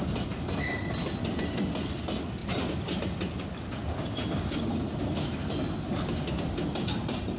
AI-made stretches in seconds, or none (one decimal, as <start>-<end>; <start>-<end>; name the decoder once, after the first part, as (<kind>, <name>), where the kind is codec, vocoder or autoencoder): none